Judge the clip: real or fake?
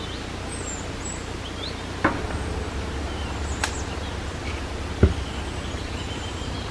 real